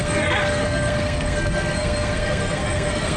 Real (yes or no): no